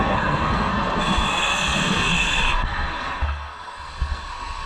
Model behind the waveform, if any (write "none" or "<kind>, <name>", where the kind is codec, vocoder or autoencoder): codec, SNAC